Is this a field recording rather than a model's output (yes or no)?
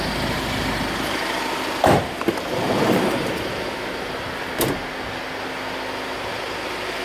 yes